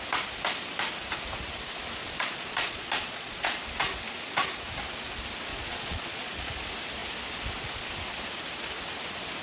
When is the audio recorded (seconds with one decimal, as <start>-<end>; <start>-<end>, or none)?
0.0-2.0; 3.6-5.5; 6.5-9.4